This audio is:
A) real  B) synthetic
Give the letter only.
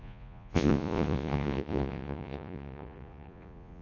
B